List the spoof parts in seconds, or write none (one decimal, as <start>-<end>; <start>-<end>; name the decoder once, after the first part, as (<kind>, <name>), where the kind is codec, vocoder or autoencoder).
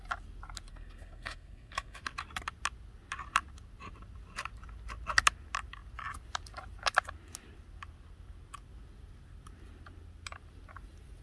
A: 0.7-2.0 (codec, SNAC)